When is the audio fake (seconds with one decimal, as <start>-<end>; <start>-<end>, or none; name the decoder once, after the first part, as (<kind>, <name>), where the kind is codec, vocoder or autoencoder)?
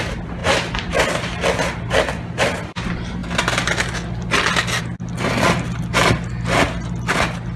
none